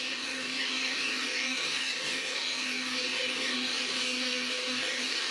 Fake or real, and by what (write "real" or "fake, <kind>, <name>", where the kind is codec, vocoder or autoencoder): fake, codec, DAC